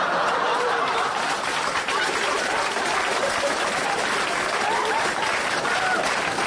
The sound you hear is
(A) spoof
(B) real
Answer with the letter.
B